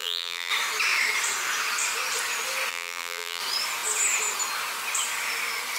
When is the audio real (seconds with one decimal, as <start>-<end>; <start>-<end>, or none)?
0.5-2.7; 3.4-5.8